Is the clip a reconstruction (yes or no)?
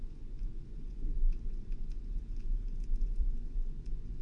yes